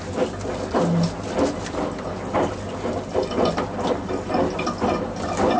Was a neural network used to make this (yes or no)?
no